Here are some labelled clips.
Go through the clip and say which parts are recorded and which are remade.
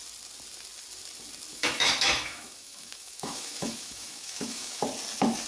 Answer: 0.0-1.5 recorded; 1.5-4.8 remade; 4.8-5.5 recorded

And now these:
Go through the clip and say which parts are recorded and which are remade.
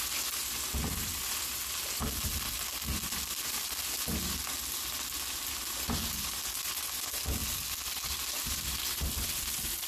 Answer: 0.0-9.9 recorded